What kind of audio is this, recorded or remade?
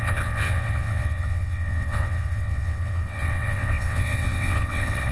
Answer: remade